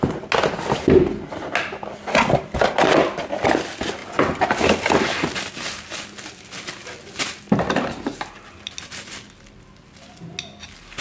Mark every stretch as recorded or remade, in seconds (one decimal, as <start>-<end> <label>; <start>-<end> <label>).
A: 0.0-11.0 recorded